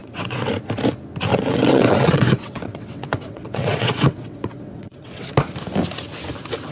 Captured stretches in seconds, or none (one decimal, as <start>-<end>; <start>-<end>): 0.5-1.3; 5.3-6.7